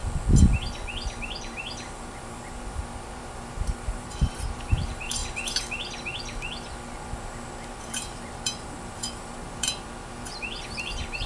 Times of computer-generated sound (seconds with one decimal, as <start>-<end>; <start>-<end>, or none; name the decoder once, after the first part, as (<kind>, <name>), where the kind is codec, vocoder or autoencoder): 1.2-5.2 (vocoder, BigVGAN v2); 7.5-11.3